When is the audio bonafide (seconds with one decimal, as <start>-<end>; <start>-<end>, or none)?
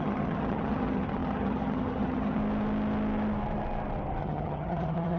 2.4-4.2